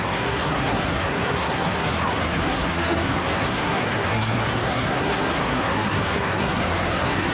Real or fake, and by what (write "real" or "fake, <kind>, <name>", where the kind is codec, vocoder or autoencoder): fake, codec, SNAC